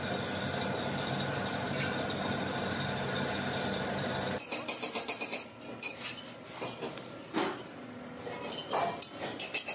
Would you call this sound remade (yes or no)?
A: no